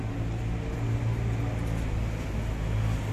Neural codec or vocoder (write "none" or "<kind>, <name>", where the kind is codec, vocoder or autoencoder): none